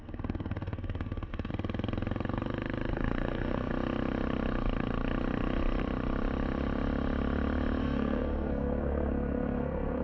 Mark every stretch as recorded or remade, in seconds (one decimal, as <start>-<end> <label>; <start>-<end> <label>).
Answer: 0.0-1.5 remade; 1.5-2.9 recorded; 2.9-3.7 remade; 3.7-7.8 recorded; 7.8-10.0 remade

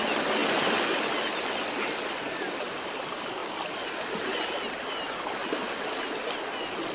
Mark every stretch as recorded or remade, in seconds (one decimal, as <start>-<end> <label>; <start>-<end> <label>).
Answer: 0.0-6.9 recorded